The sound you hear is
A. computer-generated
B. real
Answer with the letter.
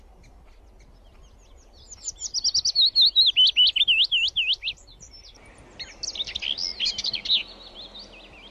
B